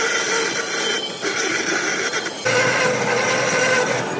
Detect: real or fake real